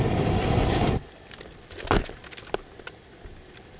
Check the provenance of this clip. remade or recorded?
recorded